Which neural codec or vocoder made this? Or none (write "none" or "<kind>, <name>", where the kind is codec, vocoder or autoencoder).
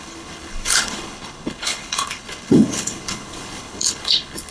codec, HILCodec